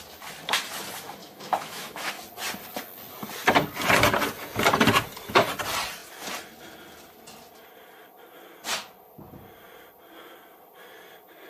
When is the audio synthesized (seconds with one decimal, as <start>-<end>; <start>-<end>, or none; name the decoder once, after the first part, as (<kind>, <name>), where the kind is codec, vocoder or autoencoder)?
1.2-2.1 (autoencoder, DAC-VAE)